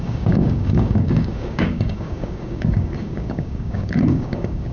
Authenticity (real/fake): fake